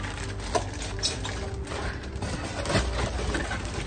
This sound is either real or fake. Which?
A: real